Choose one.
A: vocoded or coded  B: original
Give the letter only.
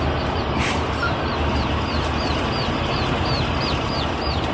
A